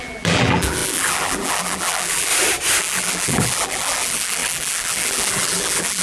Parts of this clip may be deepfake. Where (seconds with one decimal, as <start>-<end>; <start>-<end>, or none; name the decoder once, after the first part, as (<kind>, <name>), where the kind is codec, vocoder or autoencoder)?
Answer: 0.0-2.3 (vocoder, BigVGAN v2); 2.8-6.0